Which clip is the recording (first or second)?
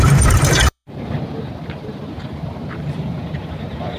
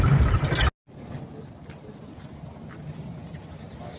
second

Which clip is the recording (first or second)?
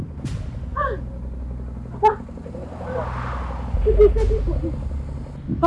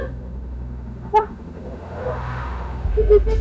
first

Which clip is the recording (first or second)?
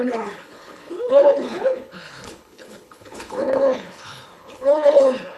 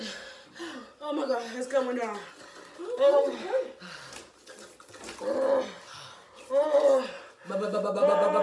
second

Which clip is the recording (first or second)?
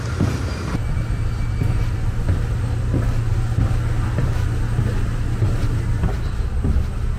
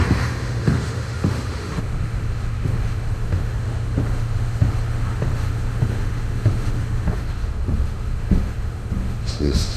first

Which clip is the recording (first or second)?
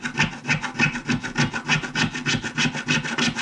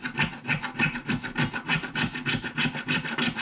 first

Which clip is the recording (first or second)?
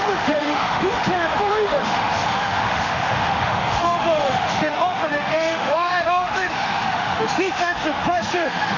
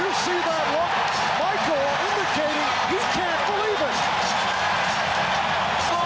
second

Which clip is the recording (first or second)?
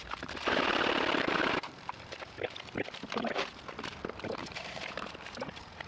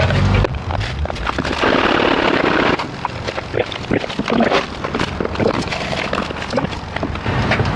second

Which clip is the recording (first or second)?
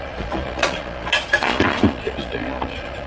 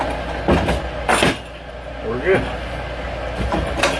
second